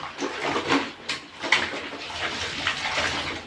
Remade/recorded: recorded